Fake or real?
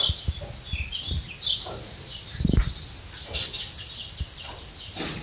real